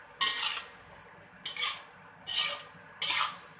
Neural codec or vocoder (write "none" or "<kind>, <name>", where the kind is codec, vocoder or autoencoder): none